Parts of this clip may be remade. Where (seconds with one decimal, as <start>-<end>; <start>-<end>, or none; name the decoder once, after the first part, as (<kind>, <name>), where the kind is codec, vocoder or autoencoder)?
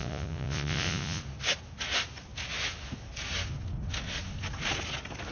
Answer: 0.0-1.2 (vocoder, Vocos)